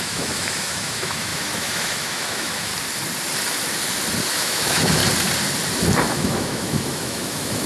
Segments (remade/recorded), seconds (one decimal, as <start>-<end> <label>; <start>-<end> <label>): 0.0-2.7 remade; 2.7-4.3 recorded; 4.3-5.0 remade; 5.0-6.1 recorded; 6.1-7.7 remade